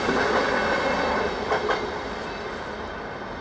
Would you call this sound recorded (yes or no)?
yes